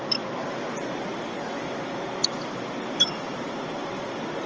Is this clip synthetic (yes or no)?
yes